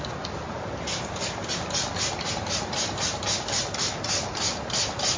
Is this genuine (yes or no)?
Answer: yes